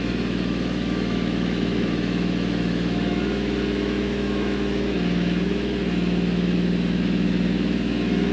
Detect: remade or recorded remade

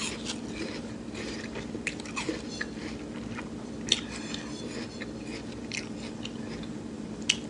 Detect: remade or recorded recorded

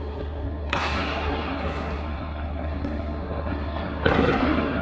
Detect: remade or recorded remade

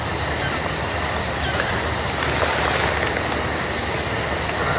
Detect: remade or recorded recorded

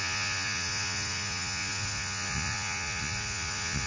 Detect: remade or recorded remade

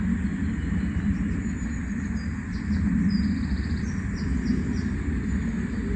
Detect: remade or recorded recorded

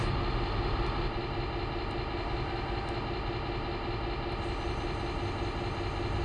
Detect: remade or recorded recorded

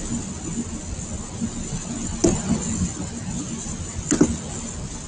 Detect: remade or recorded recorded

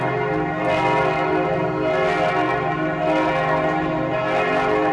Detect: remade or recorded recorded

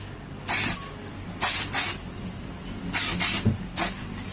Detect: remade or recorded recorded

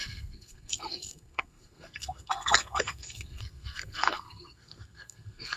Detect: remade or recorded remade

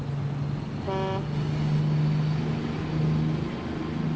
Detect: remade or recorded recorded